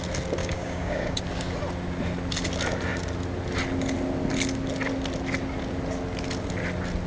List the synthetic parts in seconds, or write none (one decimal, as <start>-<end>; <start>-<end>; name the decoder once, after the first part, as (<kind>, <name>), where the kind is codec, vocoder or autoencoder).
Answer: 0.4-1.2 (codec, DAC)